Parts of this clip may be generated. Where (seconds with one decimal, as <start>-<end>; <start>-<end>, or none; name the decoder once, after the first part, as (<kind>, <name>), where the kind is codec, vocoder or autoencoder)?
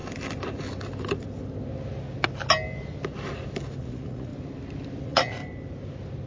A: 3.8-4.3 (vocoder, Vocos); 5.0-5.4